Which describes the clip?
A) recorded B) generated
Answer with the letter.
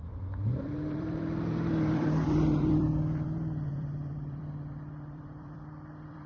B